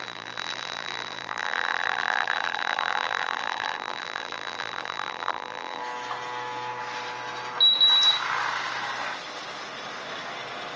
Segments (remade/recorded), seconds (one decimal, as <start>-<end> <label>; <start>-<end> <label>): 0.0-5.8 remade; 5.8-10.8 recorded